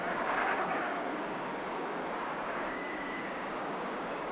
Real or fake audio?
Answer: fake